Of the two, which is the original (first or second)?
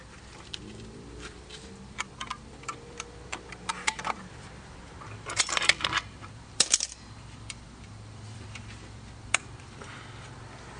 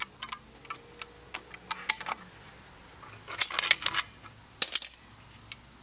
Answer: second